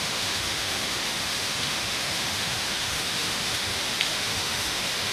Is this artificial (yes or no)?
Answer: yes